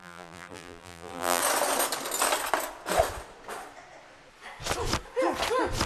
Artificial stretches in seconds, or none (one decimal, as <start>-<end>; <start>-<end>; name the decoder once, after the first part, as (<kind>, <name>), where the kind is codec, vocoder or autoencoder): 0.0-1.4 (vocoder, BigVGAN v2)